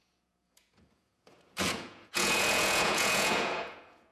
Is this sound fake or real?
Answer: fake